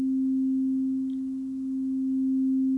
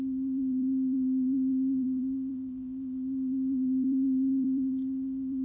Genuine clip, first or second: first